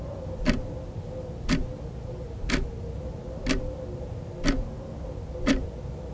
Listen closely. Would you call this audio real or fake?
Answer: real